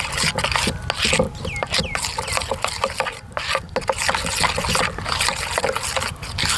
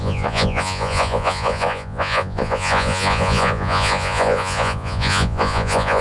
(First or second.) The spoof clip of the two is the second